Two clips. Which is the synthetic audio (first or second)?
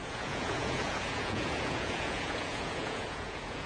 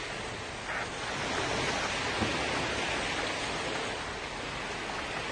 first